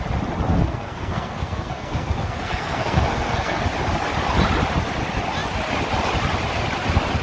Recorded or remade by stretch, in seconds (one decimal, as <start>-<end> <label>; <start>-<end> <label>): 0.0-0.5 recorded; 0.5-3.6 remade; 3.6-7.2 recorded